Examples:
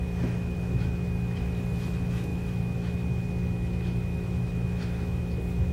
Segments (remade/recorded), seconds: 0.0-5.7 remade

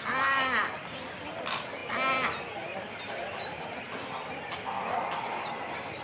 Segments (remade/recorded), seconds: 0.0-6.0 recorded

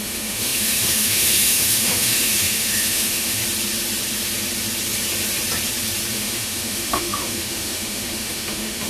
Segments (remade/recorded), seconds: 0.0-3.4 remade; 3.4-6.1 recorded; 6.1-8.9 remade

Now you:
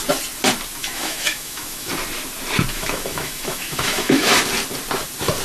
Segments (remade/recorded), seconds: 0.0-0.8 recorded; 0.8-1.9 remade; 1.9-2.7 recorded; 2.7-4.3 remade; 4.3-5.4 recorded